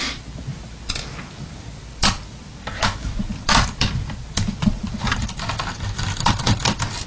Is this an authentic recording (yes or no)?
no